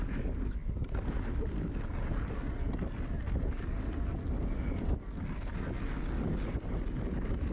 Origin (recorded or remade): recorded